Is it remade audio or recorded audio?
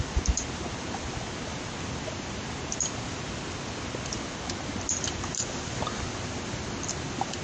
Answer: recorded